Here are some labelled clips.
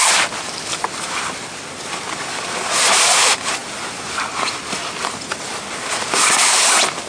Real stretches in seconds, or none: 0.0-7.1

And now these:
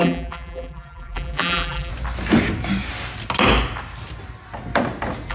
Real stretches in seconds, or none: 1.9-5.3